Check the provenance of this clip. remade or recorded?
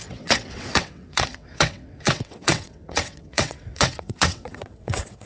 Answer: remade